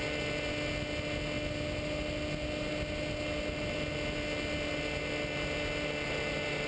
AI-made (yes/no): no